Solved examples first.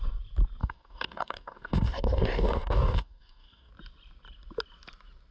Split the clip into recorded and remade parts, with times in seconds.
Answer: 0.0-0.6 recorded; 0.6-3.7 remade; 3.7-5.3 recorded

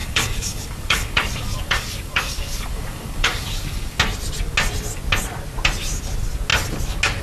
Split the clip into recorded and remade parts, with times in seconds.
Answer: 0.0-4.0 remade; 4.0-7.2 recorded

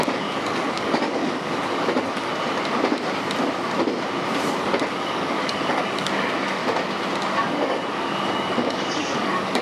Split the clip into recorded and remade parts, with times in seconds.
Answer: 0.0-2.3 remade; 2.3-4.6 recorded; 4.6-6.6 remade; 6.6-7.2 recorded; 7.2-9.6 remade

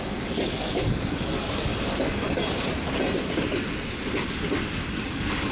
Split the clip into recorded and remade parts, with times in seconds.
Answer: 0.0-1.7 remade; 1.7-5.0 recorded; 5.0-5.5 remade

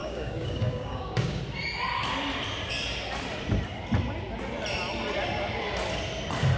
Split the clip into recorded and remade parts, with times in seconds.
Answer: 0.0-1.4 remade; 1.4-6.6 recorded

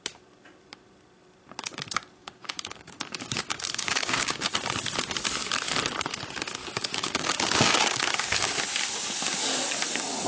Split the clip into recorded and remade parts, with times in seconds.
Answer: 0.0-2.2 recorded; 2.2-4.5 remade; 4.5-6.6 recorded; 6.6-8.6 remade; 8.6-10.3 recorded

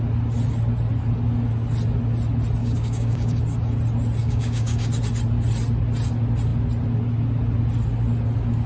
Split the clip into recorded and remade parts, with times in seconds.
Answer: 0.0-2.6 recorded; 2.6-3.4 remade; 3.4-4.2 recorded; 4.2-4.9 remade; 4.9-8.7 recorded

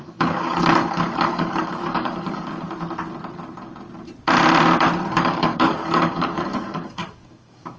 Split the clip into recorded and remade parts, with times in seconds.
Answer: 0.0-2.5 remade; 2.5-5.1 recorded; 5.1-7.8 remade